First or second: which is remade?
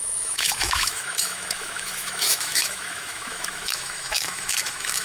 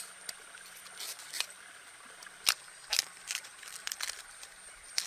first